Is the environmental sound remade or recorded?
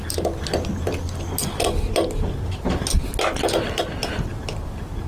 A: recorded